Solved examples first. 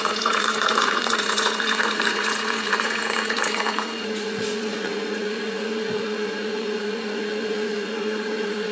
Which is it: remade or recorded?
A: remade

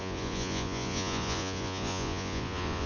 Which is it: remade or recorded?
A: remade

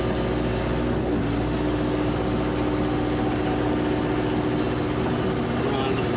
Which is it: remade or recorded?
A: recorded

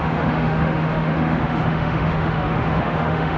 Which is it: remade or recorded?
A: remade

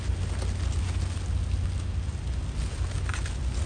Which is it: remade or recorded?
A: recorded